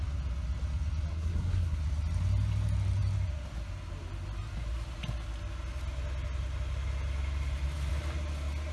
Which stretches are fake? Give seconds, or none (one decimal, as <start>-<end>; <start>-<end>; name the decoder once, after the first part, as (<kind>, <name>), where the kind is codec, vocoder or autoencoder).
1.1-1.8 (codec, SNAC)